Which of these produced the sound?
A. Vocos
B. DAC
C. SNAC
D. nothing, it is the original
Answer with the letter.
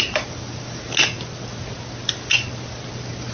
D